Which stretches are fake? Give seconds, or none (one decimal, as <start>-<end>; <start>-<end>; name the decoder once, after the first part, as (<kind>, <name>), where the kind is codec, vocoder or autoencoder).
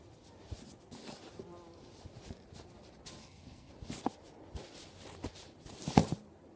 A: 3.2-3.7 (codec, SNAC)